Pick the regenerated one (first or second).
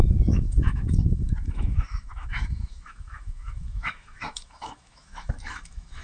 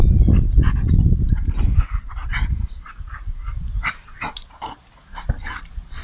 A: first